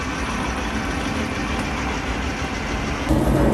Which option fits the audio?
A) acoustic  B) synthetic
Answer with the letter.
A